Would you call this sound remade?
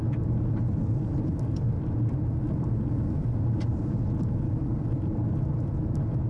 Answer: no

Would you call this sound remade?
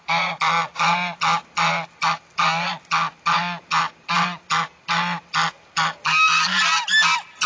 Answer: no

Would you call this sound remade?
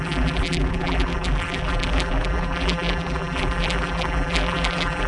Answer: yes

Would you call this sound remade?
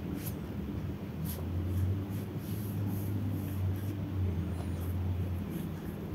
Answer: no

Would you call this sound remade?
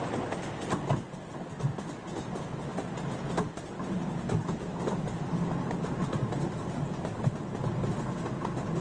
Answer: no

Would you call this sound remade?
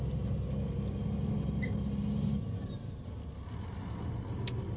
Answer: no